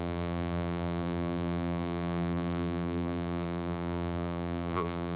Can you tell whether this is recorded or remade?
remade